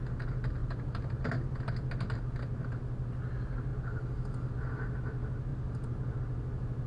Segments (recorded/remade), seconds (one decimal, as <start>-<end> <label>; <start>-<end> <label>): 0.0-0.6 recorded; 0.6-1.3 remade; 1.3-3.7 recorded; 3.7-4.5 remade; 4.5-5.5 recorded; 5.5-6.2 remade; 6.2-6.9 recorded